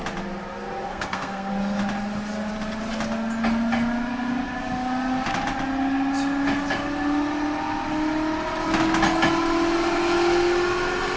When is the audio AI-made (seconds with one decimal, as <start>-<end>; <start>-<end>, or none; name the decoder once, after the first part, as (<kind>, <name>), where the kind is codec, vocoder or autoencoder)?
0.9-1.5 (codec, SNAC)